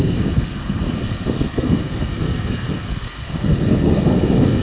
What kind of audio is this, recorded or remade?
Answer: remade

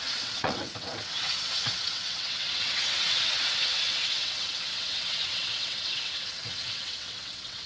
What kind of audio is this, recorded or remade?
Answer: remade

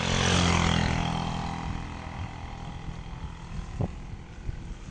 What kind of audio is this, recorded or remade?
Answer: recorded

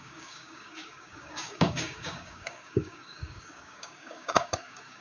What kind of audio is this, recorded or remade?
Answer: remade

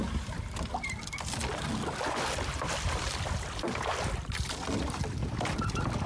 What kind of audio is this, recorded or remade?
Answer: recorded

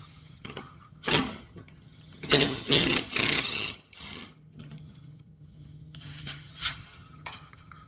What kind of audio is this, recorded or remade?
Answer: remade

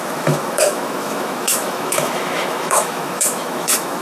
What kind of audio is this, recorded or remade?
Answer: remade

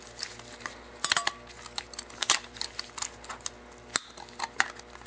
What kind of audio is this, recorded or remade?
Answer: recorded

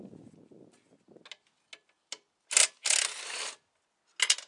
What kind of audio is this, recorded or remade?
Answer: recorded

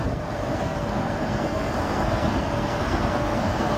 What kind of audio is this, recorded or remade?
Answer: remade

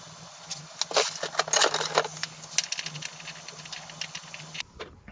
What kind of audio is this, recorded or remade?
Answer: recorded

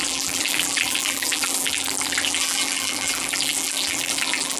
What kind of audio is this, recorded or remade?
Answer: remade